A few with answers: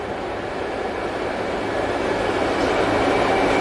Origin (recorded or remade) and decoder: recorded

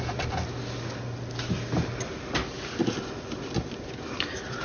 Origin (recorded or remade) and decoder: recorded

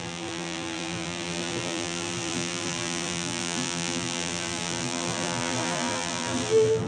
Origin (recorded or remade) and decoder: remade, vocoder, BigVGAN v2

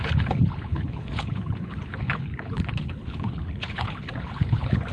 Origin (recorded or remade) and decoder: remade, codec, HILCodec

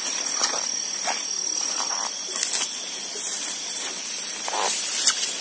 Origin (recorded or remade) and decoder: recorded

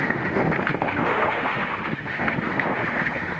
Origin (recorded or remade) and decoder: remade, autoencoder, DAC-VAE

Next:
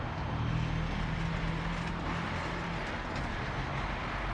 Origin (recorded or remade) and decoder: recorded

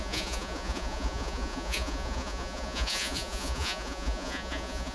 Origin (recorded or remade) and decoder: remade, vocoder, Vocos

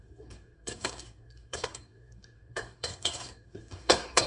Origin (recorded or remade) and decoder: remade, codec, SNAC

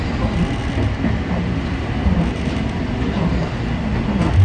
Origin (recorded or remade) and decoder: recorded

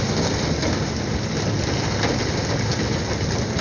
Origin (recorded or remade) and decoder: recorded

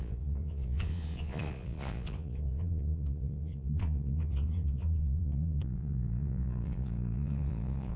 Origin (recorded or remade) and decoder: remade, vocoder, Vocos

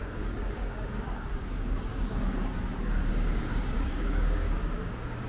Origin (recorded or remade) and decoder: remade, codec, DAC